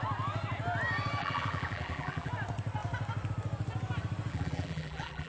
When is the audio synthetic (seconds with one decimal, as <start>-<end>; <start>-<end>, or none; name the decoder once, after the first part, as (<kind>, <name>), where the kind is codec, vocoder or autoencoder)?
1.2-2.3 (vocoder, BigVGAN v2); 4.3-5.3